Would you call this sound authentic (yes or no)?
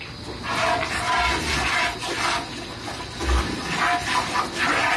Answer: yes